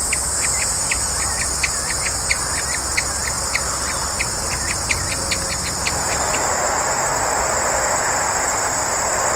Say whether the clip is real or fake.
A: real